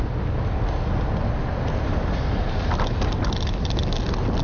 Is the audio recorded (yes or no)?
yes